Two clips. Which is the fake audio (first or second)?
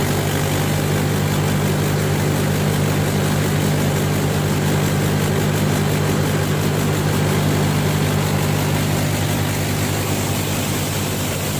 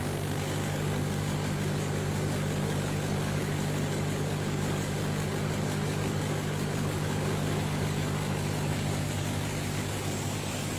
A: second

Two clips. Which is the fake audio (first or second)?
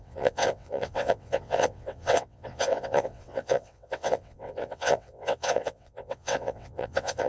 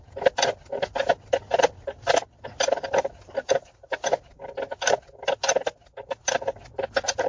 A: first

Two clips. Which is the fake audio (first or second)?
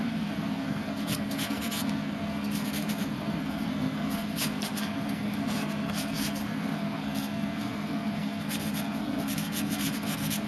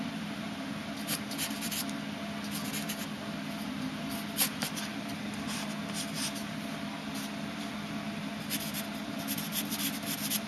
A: first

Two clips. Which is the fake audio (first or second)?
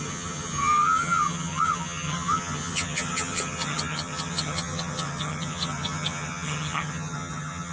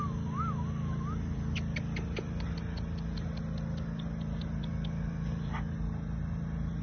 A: first